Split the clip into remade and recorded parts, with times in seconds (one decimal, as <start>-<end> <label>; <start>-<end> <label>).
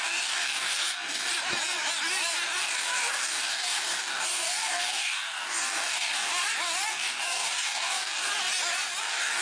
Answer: 0.0-1.3 remade; 1.3-2.6 recorded; 2.6-6.3 remade; 6.3-6.9 recorded; 6.9-8.3 remade; 8.3-9.0 recorded; 9.0-9.4 remade